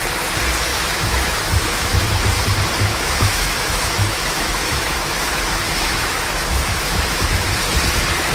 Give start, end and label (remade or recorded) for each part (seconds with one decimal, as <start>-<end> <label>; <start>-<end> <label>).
0.0-0.7 recorded; 0.7-2.1 remade; 2.1-2.9 recorded; 2.9-7.6 remade; 7.6-8.3 recorded